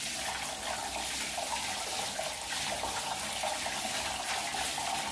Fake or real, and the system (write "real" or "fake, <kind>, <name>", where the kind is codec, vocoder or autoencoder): real